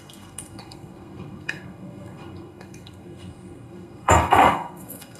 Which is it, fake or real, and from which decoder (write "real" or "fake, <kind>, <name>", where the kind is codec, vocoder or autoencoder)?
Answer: fake, codec, SNAC